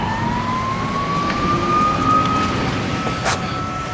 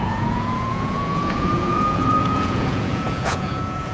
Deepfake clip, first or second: second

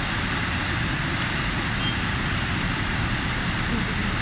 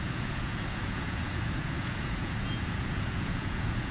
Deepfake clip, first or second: second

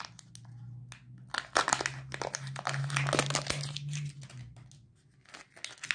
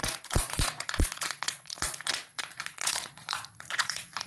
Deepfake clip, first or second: second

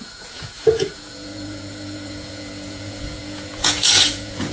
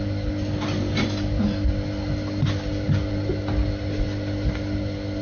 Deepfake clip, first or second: first